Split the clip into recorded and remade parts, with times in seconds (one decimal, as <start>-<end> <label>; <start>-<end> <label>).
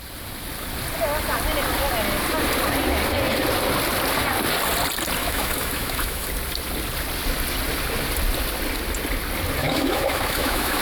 0.0-5.2 recorded; 5.2-6.3 remade; 6.3-9.6 recorded; 9.6-10.8 remade